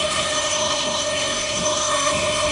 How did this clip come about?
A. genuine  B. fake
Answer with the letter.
B